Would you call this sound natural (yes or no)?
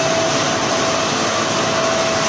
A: yes